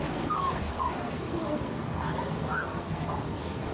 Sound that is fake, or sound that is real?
fake